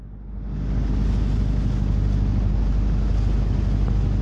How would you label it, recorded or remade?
recorded